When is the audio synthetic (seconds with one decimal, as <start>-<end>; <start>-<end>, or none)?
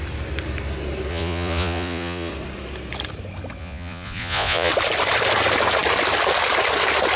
1.1-2.3; 3.6-4.7